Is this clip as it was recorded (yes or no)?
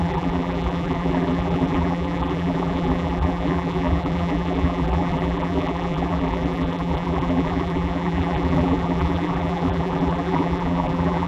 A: no